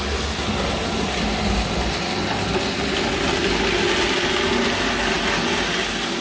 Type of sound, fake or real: real